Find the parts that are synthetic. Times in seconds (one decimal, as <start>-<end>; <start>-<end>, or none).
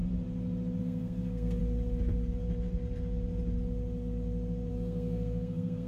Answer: 0.8-1.6; 4.7-5.9